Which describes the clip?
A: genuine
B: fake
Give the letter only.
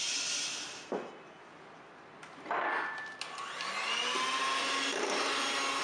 A